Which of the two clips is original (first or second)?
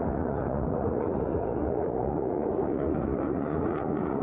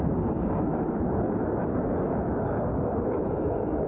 second